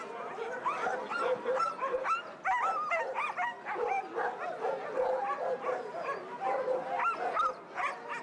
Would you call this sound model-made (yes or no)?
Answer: no